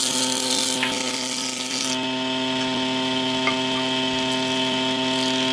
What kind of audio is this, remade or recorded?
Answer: recorded